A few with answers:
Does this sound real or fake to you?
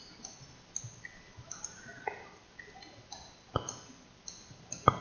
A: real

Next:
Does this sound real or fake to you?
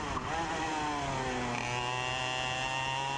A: real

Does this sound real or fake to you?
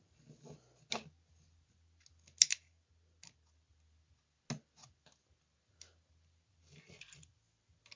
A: real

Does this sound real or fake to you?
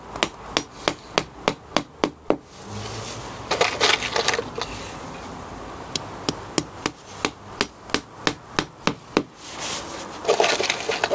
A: real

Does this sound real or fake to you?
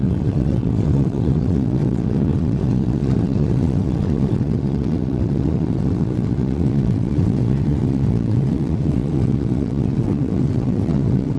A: fake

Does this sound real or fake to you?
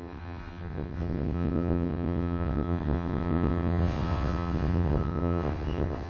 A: fake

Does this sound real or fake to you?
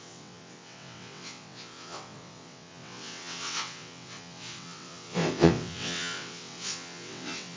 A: fake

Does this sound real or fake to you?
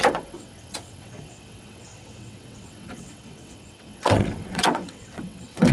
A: fake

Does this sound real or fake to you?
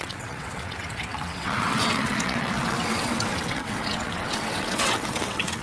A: fake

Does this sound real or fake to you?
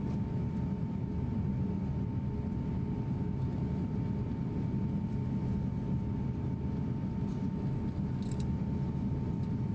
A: real